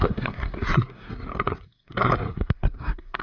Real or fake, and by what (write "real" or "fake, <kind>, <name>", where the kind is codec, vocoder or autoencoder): fake, codec, SNAC